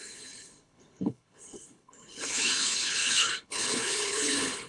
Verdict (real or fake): fake